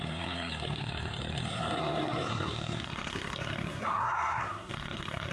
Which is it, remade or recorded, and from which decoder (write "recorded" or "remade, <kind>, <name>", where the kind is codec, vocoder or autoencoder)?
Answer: remade, codec, SNAC